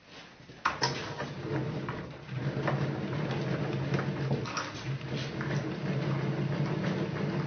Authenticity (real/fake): real